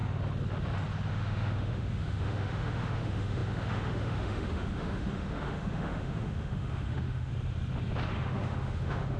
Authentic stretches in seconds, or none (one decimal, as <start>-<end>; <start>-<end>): 0.0-1.1; 7.3-8.1